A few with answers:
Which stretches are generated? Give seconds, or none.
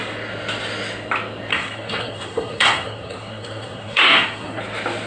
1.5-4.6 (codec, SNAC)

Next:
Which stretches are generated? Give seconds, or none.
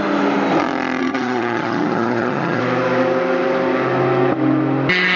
1.0-2.6 (vocoder, HiFi-GAN)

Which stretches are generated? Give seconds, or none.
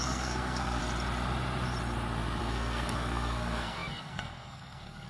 0.0-0.8 (codec, SNAC); 2.4-5.1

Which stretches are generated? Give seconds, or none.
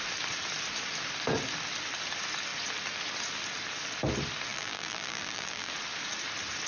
4.5-5.7 (vocoder, BigVGAN v2)